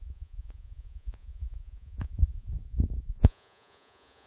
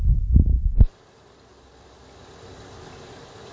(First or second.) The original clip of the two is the second